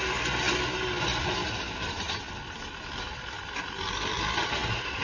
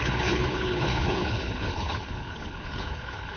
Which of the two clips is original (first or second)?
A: first